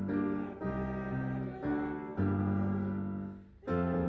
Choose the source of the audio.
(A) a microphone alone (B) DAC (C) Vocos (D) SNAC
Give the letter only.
A